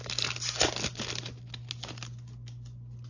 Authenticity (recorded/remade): recorded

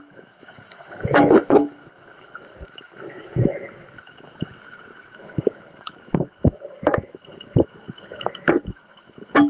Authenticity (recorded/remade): remade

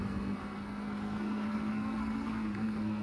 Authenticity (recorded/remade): remade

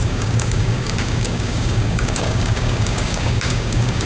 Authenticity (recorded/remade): remade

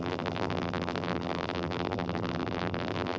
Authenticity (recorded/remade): remade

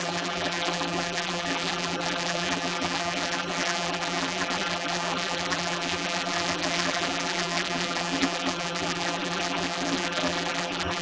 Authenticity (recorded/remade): remade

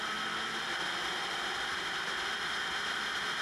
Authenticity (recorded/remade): recorded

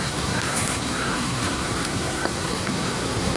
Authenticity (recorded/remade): remade